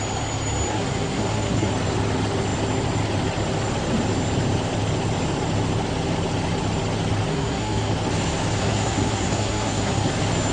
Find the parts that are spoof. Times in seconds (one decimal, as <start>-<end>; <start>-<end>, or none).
0.7-1.7; 7.3-7.9; 8.6-10.1